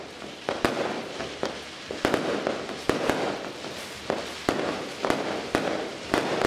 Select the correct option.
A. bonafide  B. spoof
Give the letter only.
B